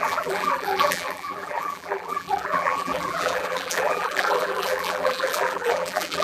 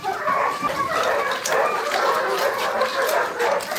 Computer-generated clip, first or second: first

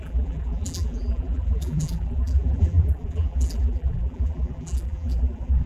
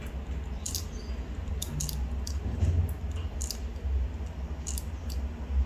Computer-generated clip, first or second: first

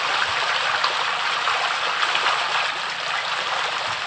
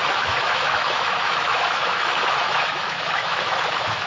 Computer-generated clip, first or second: second